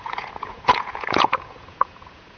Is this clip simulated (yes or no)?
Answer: yes